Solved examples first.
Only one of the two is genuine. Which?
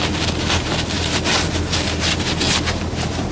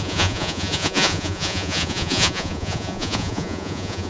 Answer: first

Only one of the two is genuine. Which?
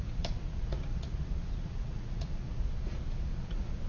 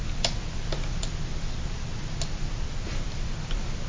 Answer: second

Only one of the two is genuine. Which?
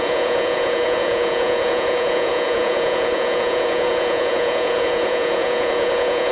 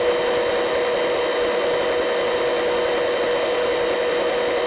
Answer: second